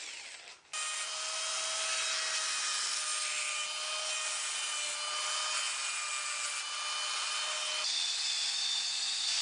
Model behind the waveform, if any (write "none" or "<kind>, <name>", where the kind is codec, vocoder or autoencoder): none